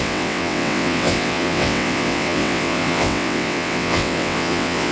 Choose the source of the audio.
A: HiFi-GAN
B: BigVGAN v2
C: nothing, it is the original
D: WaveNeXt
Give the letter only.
D